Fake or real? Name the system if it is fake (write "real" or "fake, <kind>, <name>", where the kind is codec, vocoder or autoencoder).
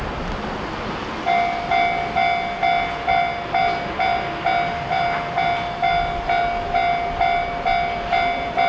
real